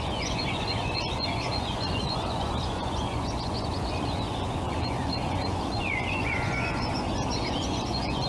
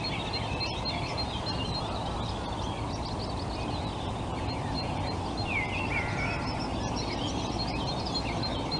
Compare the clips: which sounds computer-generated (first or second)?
first